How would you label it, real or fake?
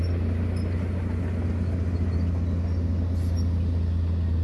real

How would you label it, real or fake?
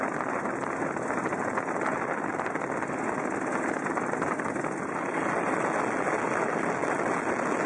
real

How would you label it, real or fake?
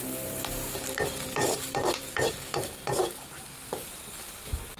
fake